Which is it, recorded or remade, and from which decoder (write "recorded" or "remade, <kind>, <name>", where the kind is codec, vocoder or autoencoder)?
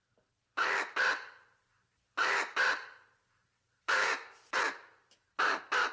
recorded